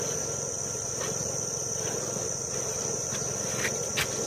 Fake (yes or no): no